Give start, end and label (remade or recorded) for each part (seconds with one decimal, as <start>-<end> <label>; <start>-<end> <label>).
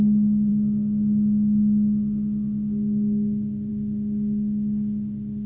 0.0-5.5 recorded